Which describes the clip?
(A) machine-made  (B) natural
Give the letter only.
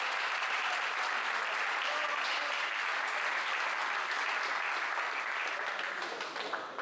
B